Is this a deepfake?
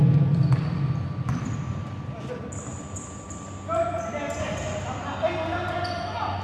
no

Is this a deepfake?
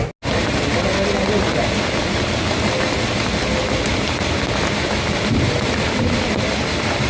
no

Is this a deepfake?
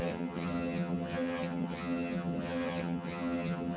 yes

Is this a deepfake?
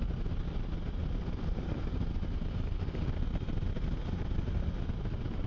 no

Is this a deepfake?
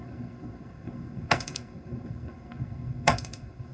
yes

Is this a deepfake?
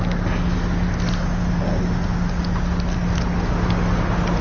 no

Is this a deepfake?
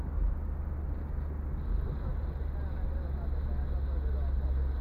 no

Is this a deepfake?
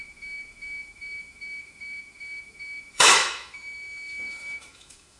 yes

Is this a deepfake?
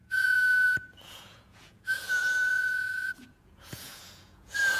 yes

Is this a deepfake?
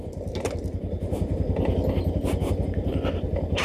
no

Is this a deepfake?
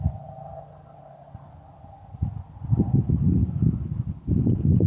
no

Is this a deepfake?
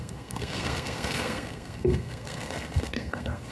yes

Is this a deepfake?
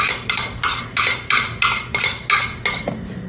no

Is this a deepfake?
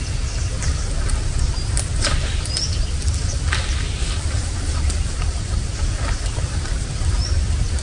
no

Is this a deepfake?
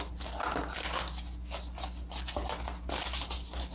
no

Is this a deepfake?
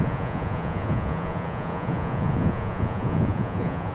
yes